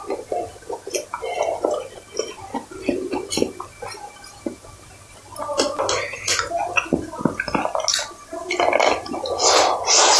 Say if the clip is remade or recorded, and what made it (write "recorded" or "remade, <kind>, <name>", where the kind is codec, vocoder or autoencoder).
recorded